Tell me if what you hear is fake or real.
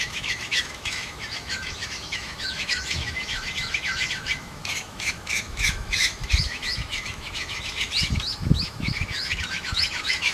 fake